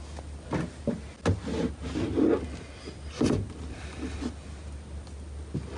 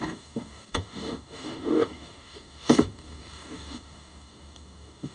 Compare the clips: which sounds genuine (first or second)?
first